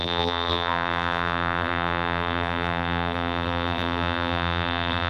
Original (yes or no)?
no